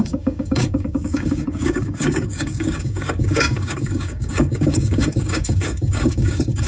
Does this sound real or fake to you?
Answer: fake